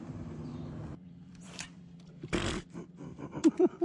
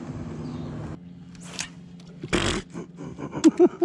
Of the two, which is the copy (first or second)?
first